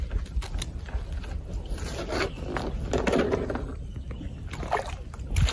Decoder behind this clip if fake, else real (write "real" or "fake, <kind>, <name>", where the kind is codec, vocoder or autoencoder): real